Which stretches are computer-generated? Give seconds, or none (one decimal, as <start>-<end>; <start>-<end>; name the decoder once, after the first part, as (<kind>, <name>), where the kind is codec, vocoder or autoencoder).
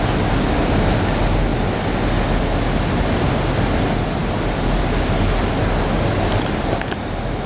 none